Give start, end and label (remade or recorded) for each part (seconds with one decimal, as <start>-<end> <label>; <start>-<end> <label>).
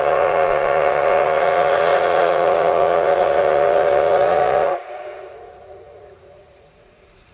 0.0-7.3 remade